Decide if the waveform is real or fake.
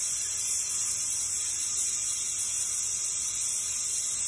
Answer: real